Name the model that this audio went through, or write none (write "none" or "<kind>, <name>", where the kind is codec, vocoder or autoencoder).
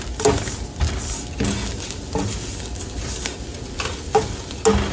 none